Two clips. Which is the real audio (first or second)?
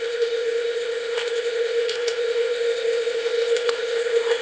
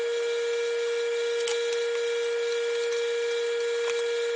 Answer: second